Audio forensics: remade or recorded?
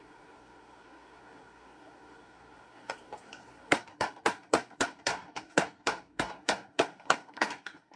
remade